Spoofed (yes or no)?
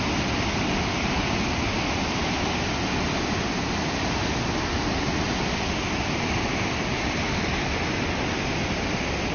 no